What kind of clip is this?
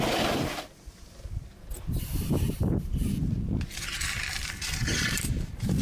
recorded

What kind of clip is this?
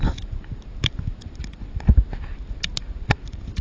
recorded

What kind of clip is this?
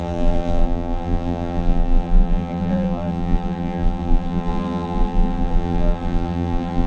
remade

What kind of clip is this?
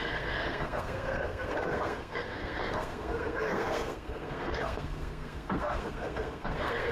remade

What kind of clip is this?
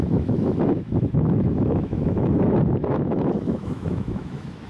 remade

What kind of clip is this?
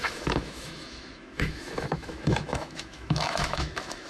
remade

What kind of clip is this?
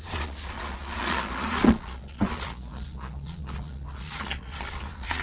remade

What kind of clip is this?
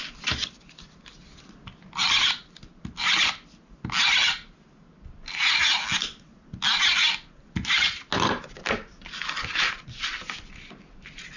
recorded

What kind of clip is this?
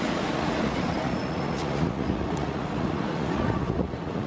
remade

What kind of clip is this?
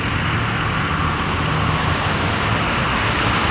recorded